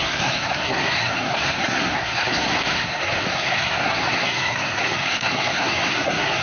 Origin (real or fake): fake